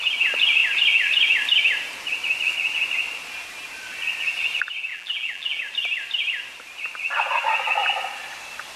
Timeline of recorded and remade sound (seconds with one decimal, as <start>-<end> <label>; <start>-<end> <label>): 0.0-4.9 recorded; 4.9-5.6 remade; 5.6-8.8 recorded